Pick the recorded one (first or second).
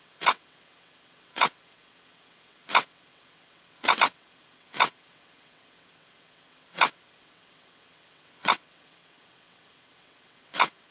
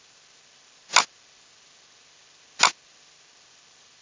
second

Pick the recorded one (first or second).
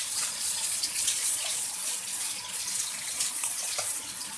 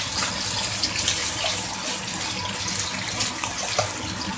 second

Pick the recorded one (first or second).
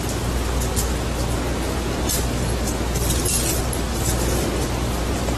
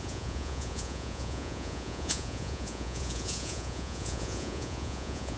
first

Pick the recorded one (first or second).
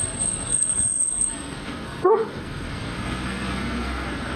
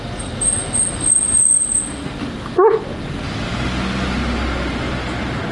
second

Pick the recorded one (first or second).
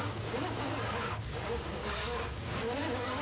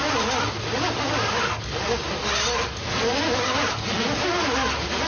second